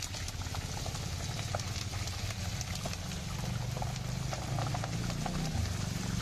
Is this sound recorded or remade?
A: recorded